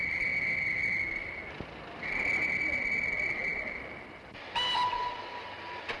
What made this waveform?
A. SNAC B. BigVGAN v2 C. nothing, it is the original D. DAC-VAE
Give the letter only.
C